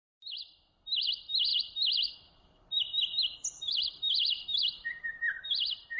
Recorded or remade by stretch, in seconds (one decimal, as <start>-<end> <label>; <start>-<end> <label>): 0.0-6.0 recorded